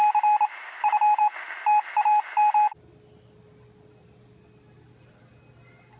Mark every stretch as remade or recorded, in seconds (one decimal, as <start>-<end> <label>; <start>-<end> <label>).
0.0-6.0 recorded